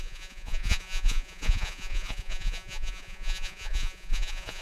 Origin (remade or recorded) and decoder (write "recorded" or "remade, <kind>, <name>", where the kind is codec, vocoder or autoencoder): remade, vocoder, Vocos